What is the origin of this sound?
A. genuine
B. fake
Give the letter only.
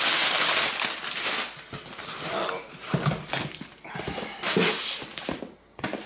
B